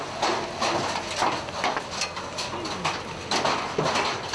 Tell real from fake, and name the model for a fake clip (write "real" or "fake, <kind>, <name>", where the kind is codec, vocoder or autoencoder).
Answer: real